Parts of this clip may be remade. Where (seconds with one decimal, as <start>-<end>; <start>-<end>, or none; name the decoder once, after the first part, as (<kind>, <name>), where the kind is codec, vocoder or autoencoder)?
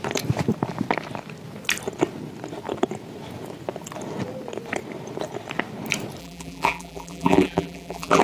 6.2-8.2 (vocoder, BigVGAN v2)